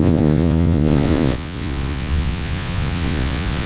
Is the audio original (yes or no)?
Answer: no